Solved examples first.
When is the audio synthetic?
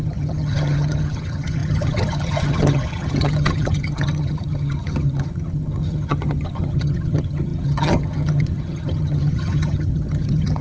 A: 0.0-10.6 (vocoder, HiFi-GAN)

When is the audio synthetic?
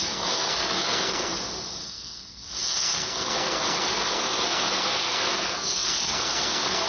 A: 0.0-1.3 (codec, SNAC); 1.8-6.9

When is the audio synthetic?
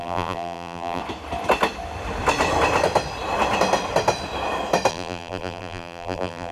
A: 0.0-1.0 (vocoder, BigVGAN v2); 4.9-6.5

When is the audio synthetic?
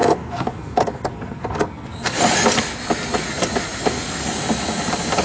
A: 0.0-2.2 (codec, SNAC)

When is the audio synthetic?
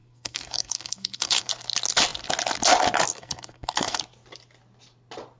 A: 0.0-1.5 (codec, SNAC); 3.1-4.0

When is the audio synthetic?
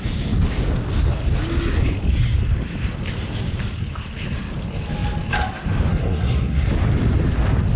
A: 5.9-6.7 (codec, SNAC)